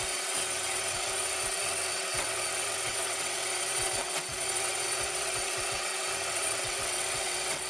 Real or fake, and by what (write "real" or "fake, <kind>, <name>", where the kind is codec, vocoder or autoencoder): fake, vocoder, WaveNeXt